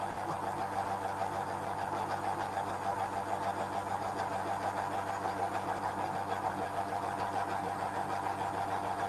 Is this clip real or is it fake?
real